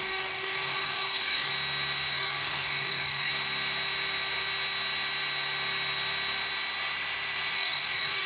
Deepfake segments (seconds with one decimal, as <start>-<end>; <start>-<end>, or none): 0.0-1.5; 2.1-3.3; 7.5-8.3